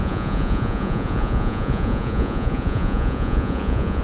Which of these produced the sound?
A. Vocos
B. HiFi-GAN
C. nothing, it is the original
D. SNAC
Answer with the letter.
A